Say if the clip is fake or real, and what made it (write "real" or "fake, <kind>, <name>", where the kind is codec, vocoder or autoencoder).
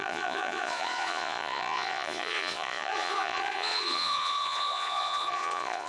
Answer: fake, vocoder, Vocos